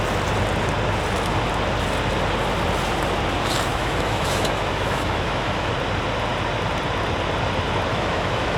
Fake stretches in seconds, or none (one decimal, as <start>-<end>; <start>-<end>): 3.7-5.7; 7.9-8.6